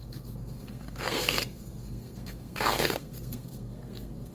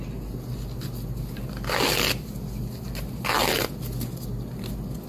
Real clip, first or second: second